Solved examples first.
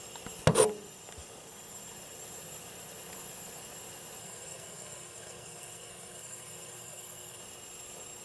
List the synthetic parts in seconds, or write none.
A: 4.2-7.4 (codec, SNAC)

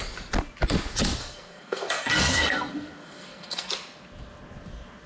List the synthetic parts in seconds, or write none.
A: 1.2-3.7 (codec, SNAC)